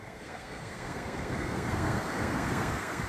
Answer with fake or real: fake